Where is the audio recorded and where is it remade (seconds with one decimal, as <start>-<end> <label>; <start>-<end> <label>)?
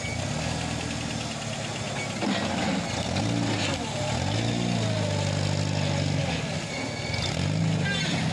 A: 0.0-8.3 recorded